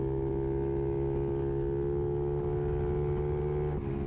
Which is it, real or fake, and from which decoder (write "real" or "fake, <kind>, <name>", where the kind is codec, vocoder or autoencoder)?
real